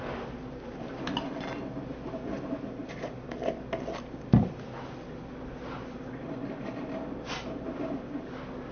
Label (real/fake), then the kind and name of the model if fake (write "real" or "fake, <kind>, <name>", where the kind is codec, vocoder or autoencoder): real